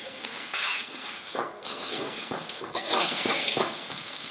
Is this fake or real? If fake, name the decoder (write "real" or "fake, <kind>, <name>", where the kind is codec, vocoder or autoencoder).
fake, codec, SNAC